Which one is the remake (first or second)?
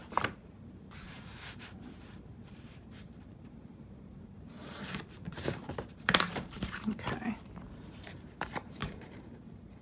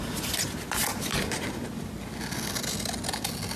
first